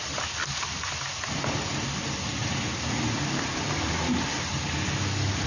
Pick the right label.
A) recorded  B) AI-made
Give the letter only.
A